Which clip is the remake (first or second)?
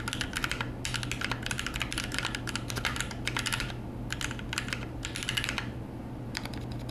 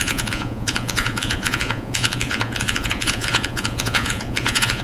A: second